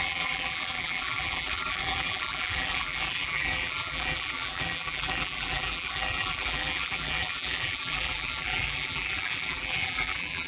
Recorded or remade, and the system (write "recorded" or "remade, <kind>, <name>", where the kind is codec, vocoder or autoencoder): remade, vocoder, BigVGAN v2